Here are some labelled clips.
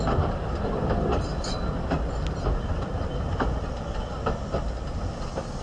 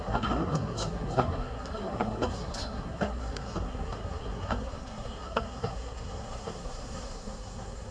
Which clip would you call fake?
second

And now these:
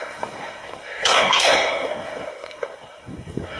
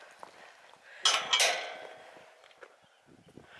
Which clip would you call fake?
first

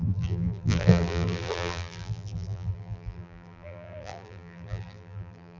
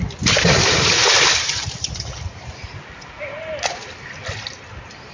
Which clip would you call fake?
first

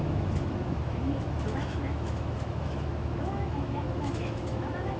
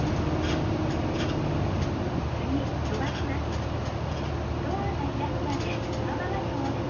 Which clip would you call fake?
first